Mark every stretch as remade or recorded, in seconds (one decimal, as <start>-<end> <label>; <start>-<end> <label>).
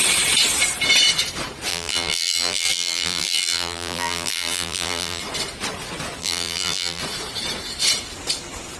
0.0-1.7 recorded; 1.7-5.2 remade; 5.2-6.2 recorded; 6.2-7.0 remade; 7.0-8.8 recorded